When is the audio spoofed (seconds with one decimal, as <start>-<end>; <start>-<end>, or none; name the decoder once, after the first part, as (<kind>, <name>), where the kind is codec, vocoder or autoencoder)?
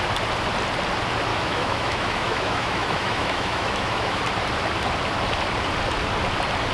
1.3-4.2 (autoencoder, DAC-VAE)